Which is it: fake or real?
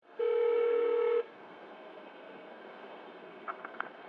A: fake